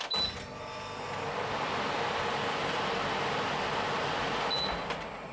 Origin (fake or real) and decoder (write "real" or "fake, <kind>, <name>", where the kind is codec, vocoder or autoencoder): real